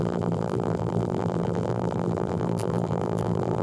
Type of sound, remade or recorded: remade